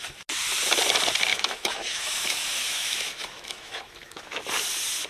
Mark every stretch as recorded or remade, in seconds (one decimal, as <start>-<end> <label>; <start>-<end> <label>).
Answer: 0.0-1.3 recorded; 1.3-4.4 remade; 4.4-5.1 recorded